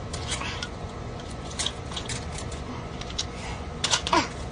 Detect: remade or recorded remade